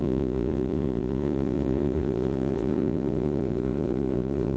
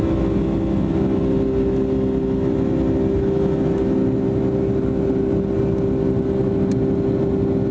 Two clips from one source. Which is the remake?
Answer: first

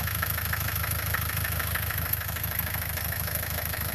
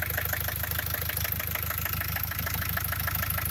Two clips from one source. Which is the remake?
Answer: first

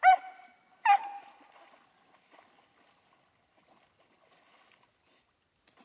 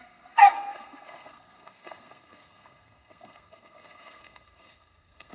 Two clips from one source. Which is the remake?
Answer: second